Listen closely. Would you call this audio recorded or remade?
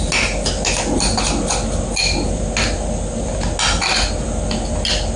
recorded